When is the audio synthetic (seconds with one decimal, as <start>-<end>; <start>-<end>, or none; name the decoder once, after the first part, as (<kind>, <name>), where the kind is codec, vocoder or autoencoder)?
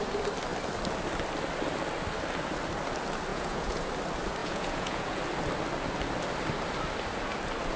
3.3-3.9 (vocoder, Vocos); 4.4-5.2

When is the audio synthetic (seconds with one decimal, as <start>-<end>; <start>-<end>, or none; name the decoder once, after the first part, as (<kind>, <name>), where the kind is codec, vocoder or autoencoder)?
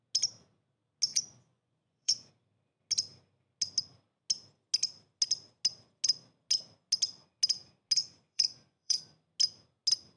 1.1-2.3 (vocoder, Vocos); 8.0-9.0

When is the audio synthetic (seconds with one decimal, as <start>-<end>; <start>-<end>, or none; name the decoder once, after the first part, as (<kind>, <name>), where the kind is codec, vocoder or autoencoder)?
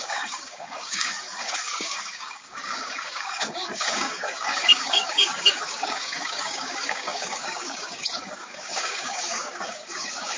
0.0-10.4 (codec, DAC)